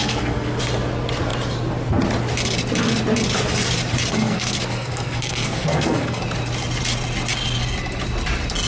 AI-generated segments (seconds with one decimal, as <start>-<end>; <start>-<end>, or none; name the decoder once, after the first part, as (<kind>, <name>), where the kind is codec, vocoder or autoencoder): 0.0-0.6 (codec, SNAC); 4.1-6.2